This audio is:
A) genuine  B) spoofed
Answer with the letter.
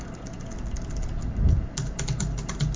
A